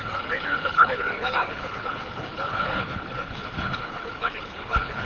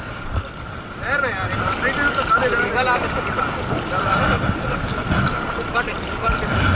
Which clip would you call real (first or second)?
second